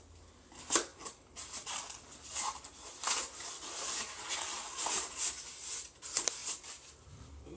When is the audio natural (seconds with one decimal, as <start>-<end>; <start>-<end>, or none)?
0.0-0.9; 5.4-6.4; 7.1-7.6